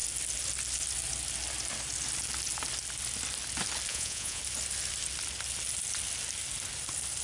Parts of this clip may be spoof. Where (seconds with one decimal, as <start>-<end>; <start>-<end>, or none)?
3.9-4.4